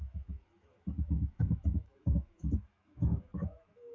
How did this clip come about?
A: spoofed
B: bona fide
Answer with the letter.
A